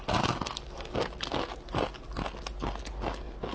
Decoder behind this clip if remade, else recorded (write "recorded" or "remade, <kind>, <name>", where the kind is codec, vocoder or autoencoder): recorded